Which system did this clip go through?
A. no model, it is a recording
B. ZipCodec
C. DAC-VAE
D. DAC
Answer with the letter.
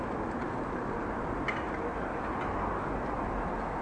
A